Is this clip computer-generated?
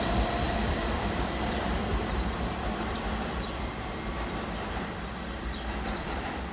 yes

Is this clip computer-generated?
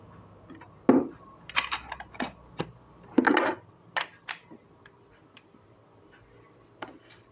no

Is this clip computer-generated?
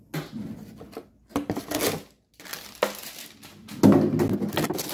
no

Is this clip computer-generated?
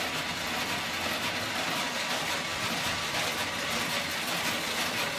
no